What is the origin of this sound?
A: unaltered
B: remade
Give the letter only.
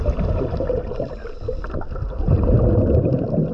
A